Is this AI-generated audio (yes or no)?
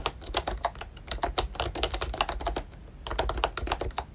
no